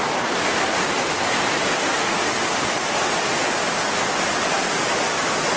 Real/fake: real